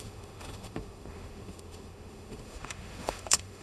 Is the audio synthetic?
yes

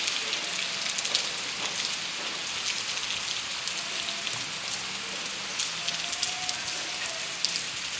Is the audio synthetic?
no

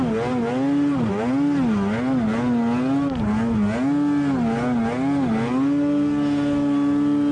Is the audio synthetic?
no